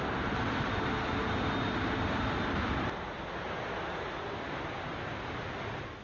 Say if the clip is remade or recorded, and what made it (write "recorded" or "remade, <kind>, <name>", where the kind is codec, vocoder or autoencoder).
recorded